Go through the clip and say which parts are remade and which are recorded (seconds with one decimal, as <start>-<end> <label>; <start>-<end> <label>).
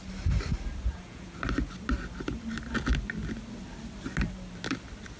0.0-0.9 recorded; 0.9-1.4 remade; 1.4-5.2 recorded